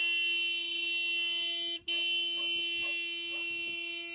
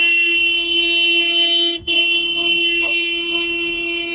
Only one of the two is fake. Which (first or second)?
second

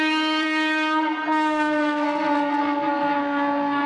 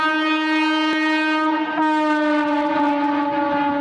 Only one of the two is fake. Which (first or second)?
first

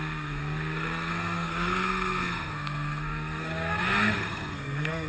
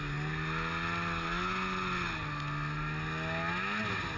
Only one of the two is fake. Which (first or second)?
first